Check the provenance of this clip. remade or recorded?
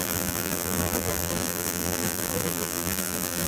remade